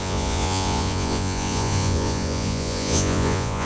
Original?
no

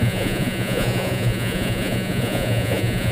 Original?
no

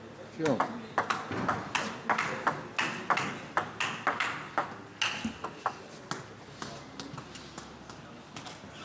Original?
yes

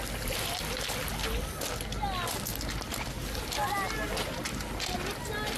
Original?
yes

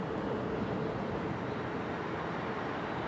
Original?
yes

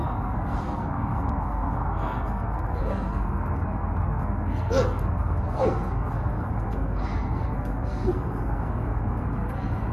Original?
no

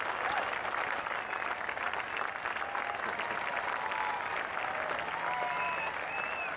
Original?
yes